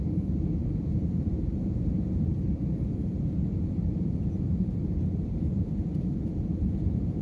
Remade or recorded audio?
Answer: remade